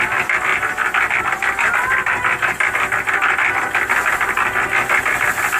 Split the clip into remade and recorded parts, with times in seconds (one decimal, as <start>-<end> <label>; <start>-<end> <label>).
0.0-5.6 recorded